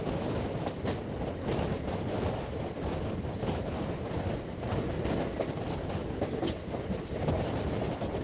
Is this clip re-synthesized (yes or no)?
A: no